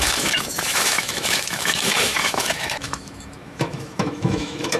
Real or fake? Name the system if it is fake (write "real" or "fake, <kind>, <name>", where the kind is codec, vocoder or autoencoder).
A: fake, autoencoder, DAC-VAE